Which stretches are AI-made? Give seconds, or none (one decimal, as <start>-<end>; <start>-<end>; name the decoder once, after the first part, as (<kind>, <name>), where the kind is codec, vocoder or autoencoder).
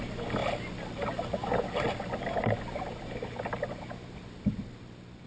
none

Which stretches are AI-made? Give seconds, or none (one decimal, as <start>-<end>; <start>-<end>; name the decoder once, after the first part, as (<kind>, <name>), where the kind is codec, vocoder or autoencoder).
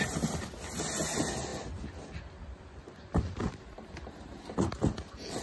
none